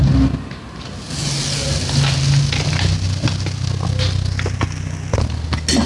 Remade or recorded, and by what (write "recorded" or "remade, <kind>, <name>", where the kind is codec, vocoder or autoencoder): recorded